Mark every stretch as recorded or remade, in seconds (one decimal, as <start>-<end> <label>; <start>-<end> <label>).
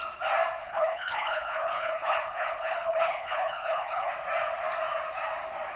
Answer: 0.0-0.6 recorded; 0.6-4.1 remade; 4.1-5.8 recorded